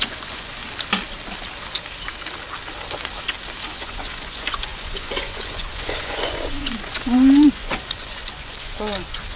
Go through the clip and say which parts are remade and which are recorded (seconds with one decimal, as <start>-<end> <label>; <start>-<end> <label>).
0.0-0.6 remade; 0.6-3.8 recorded; 3.8-9.4 remade